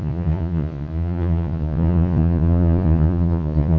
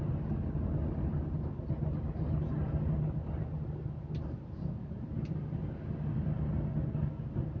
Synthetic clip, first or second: first